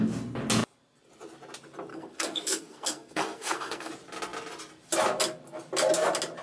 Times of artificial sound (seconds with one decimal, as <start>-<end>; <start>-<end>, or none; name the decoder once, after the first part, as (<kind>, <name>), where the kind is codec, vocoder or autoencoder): 1.9-3.9 (codec, SNAC)